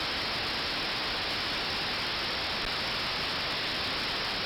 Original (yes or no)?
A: yes